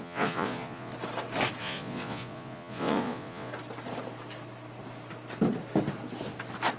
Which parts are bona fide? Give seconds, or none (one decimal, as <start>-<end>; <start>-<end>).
0.9-1.6; 3.5-6.8